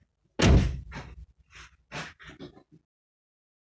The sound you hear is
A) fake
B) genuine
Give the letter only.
B